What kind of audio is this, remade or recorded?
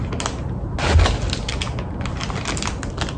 recorded